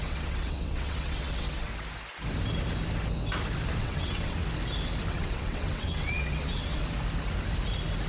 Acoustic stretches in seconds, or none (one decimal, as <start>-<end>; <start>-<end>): 1.7-3.8; 4.4-5.1; 6.8-8.1